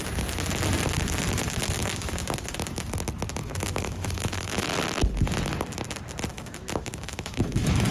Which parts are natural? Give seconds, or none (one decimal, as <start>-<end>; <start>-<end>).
0.0-3.4; 4.7-6.3